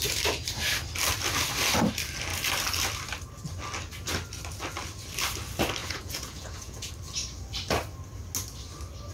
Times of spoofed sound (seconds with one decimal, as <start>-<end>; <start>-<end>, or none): 5.8-6.9